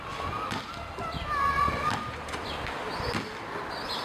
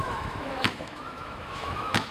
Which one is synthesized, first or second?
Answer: second